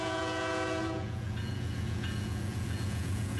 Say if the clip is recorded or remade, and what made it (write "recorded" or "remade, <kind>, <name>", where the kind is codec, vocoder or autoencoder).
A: remade, vocoder, Vocos